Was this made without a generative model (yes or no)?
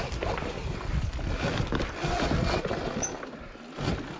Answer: yes